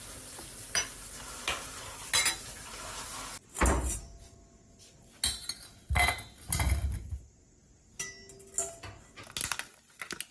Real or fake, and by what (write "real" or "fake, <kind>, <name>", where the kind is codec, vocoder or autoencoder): real